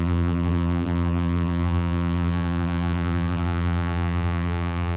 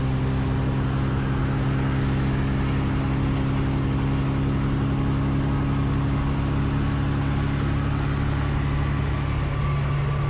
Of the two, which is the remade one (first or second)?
first